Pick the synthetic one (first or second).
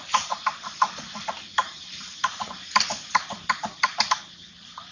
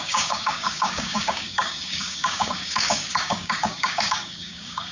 second